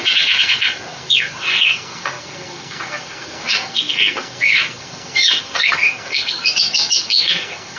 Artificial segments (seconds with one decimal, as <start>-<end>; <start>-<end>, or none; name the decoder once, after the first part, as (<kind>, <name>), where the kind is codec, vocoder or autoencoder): 0.0-7.8 (codec, SNAC)